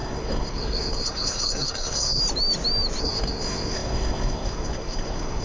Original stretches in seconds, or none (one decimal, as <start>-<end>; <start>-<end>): 2.2-3.0